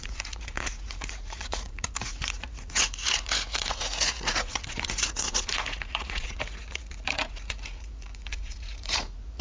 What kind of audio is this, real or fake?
fake